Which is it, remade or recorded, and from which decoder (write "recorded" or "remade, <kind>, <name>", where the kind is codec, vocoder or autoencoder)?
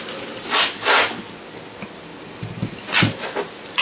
recorded